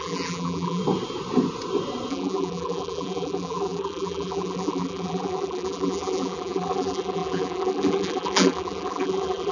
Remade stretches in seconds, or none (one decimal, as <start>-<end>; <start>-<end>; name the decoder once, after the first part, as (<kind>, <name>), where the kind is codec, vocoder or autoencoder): 0.0-0.8 (vocoder, BigVGAN v2); 2.1-9.5